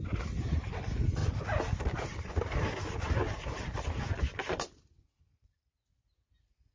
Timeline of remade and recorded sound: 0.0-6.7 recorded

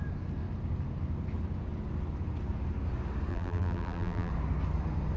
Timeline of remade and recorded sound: 0.0-3.3 recorded; 3.3-4.3 remade; 4.3-5.2 recorded

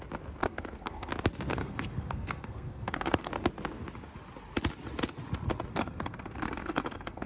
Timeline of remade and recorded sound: 0.0-0.4 recorded; 0.4-1.1 remade; 1.1-1.5 recorded; 1.5-3.3 remade; 3.3-5.7 recorded; 5.7-7.3 remade

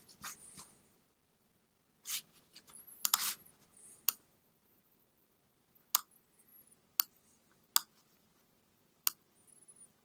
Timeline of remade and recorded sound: 0.0-10.0 recorded

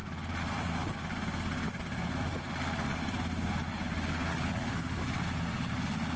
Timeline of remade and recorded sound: 0.0-6.2 recorded

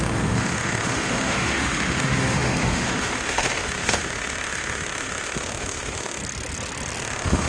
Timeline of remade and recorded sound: 0.0-6.2 remade; 6.2-7.0 recorded; 7.0-7.5 remade

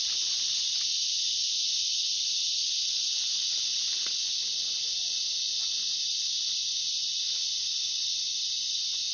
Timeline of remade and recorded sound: 0.0-9.1 recorded